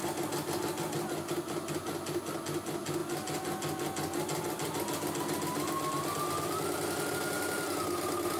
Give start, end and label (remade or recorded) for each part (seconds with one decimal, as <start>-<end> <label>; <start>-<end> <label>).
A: 0.0-8.4 recorded